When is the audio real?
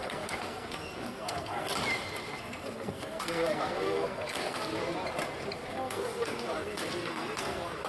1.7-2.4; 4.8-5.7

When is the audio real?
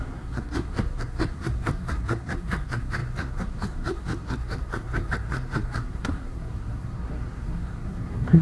none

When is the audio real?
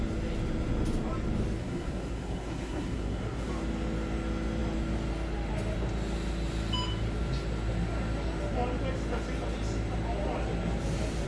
0.0-1.6; 3.5-11.3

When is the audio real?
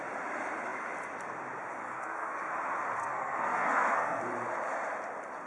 0.0-1.8; 2.5-3.0; 4.2-5.5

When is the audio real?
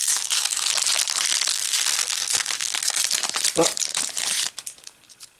0.7-1.5; 3.0-5.4